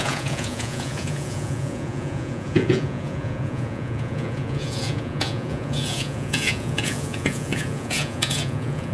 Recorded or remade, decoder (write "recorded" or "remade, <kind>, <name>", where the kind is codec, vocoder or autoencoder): remade, vocoder, Vocos